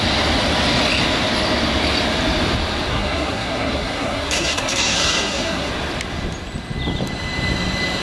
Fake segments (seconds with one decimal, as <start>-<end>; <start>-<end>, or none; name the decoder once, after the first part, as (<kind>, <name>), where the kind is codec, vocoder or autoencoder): 2.9-5.7 (codec, SNAC)